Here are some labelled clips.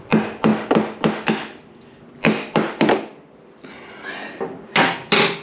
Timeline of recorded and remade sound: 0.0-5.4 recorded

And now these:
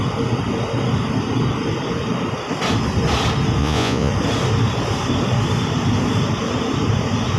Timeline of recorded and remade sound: 0.0-3.6 recorded; 3.6-4.1 remade; 4.1-7.4 recorded

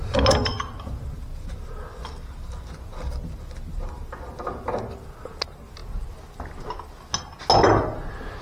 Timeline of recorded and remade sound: 0.0-8.4 recorded

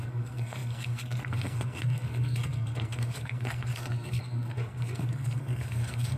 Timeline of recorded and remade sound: 0.0-6.2 remade

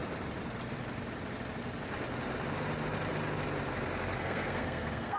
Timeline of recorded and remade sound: 0.0-4.2 recorded; 4.2-5.2 remade

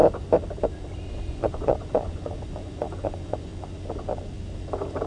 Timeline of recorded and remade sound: 0.0-1.1 recorded; 1.1-3.5 remade; 3.5-5.1 recorded

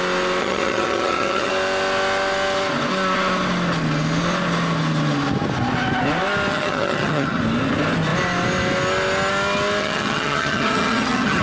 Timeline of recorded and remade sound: 0.0-0.4 recorded; 0.4-1.5 remade; 1.5-6.5 recorded; 6.5-7.4 remade; 7.4-9.8 recorded; 9.8-11.4 remade